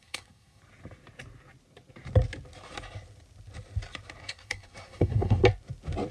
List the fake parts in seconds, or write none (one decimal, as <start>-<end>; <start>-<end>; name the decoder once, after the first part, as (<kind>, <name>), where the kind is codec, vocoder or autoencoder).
0.0-0.6 (codec, SNAC); 4.3-5.4